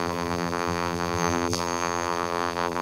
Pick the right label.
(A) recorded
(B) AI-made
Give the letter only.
B